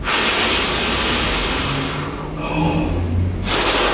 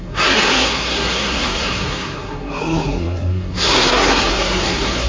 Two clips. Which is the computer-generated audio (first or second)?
second